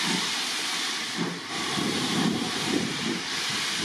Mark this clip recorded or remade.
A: remade